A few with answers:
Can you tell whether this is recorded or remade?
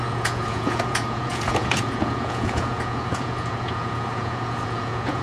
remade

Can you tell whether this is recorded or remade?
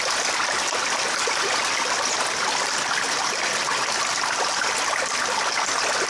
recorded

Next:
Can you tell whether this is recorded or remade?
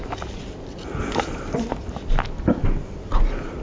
recorded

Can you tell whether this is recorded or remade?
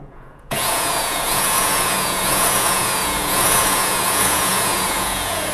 remade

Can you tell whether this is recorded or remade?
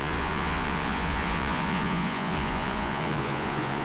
remade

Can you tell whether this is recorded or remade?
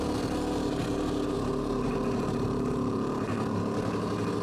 recorded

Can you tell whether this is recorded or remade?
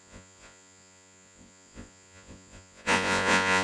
remade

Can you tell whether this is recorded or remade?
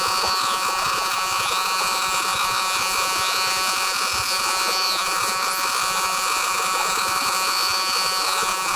remade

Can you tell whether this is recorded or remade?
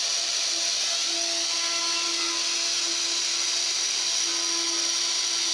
recorded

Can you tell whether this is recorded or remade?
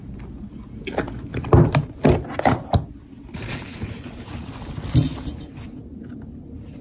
recorded